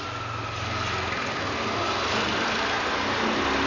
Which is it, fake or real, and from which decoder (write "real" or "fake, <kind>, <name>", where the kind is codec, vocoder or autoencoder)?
real